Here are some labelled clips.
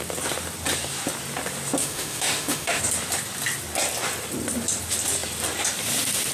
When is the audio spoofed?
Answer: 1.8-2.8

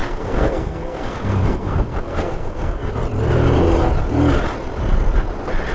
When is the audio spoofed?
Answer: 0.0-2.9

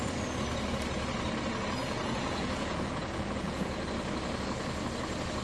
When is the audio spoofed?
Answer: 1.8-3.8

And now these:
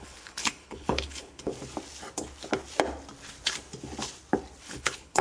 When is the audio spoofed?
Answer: 0.0-1.5; 4.6-5.2

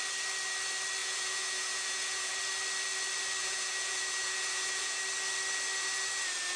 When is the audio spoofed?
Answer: 1.0-2.3; 3.4-5.0

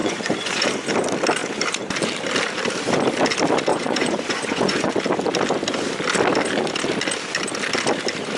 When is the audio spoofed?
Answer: 0.0-0.7; 3.7-4.9